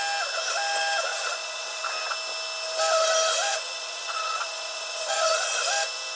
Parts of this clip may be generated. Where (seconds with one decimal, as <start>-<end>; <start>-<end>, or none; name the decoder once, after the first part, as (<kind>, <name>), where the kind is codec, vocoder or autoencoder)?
1.1-1.8 (vocoder, Vocos); 3.5-5.6